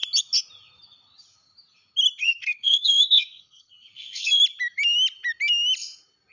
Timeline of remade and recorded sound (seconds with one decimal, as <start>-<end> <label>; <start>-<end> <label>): 0.0-2.2 recorded; 2.2-4.4 remade; 4.4-6.3 recorded